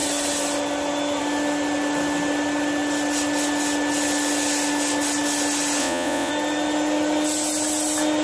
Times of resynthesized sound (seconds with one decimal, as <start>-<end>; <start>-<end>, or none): 5.8-6.3